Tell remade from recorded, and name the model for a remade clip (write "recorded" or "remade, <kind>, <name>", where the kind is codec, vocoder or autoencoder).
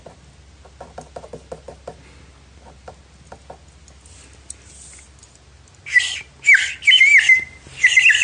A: recorded